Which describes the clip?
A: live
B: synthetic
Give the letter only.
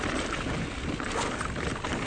A